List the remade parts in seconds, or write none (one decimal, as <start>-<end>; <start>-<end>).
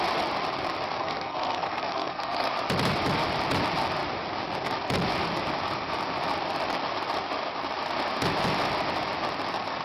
1.0-2.5